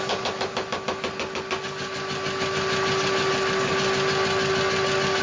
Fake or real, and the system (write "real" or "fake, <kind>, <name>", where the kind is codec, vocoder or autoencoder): real